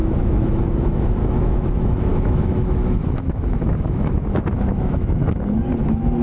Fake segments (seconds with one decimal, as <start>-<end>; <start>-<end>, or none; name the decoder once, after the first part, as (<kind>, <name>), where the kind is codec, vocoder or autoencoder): 0.0-5.2 (autoencoder, DAC-VAE); 5.8-6.2